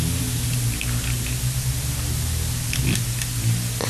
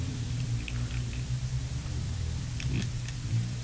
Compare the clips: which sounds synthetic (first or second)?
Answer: second